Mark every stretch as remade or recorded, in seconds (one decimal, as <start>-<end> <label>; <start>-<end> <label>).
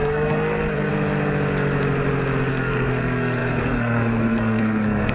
0.0-0.9 remade; 0.9-2.5 recorded; 2.5-5.1 remade